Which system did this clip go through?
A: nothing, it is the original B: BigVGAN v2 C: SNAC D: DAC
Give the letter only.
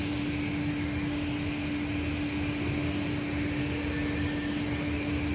A